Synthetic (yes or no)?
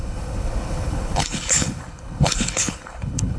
yes